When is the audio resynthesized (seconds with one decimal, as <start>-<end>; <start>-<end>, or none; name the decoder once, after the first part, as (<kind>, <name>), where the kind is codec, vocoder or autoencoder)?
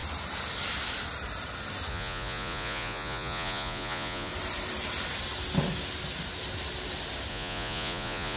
1.9-4.3 (vocoder, Vocos); 7.3-8.4